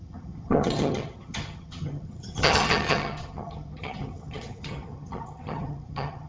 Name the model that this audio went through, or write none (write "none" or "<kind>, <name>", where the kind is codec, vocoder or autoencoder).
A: vocoder, HiFi-GAN